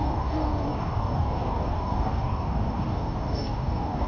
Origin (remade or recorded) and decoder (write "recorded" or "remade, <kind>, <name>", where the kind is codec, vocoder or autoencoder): remade, codec, DAC